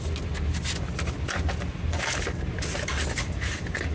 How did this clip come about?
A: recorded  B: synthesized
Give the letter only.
A